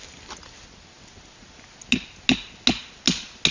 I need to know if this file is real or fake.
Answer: real